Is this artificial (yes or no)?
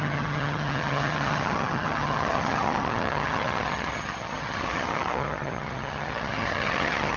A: yes